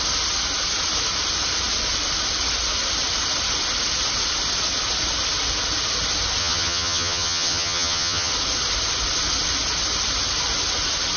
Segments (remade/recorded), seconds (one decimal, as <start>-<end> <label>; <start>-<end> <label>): 0.0-6.4 recorded; 6.4-8.3 remade; 8.3-11.2 recorded